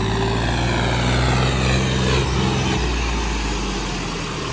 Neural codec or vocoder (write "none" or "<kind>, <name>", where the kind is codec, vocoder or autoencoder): none